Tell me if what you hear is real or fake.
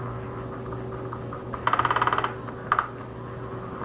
real